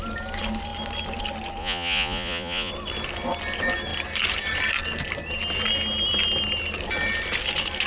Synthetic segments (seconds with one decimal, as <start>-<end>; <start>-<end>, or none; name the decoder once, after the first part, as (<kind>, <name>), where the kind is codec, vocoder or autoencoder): 1.6-2.7 (vocoder, Vocos)